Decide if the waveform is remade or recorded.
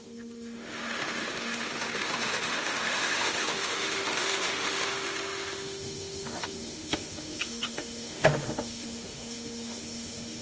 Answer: remade